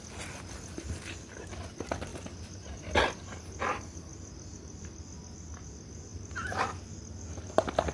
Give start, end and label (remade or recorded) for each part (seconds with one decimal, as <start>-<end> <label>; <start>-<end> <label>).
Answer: 0.0-7.9 recorded